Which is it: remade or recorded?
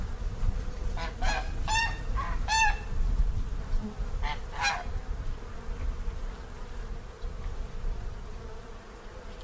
recorded